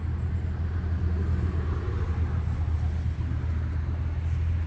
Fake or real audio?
real